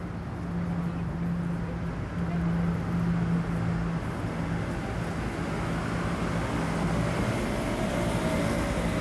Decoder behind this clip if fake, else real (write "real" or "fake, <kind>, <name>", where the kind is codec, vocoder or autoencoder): real